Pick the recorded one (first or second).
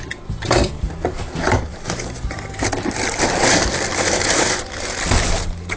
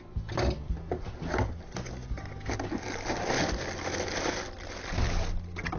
second